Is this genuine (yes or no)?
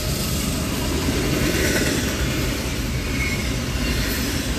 no